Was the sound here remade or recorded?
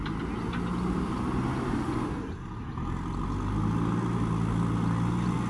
recorded